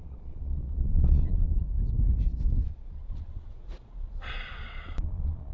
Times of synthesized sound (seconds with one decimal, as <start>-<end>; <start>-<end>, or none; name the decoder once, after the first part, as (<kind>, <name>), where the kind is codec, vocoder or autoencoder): 0.0-1.5 (vocoder, Vocos); 2.6-5.5